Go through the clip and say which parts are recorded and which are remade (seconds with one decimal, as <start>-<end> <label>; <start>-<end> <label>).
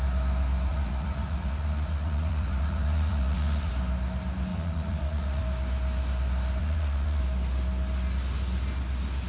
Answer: 0.0-0.7 recorded; 0.7-3.7 remade; 3.7-4.5 recorded; 4.5-5.4 remade; 5.4-6.6 recorded; 6.6-7.2 remade; 7.2-9.3 recorded